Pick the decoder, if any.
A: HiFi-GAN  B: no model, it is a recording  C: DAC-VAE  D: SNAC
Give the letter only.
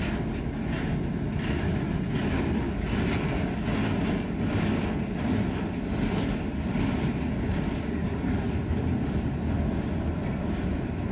B